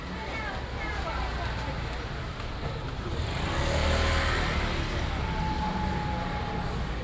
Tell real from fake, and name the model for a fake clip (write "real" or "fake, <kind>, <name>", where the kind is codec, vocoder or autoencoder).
real